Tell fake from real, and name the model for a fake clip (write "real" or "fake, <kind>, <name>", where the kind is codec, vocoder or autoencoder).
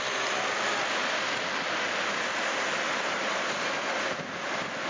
real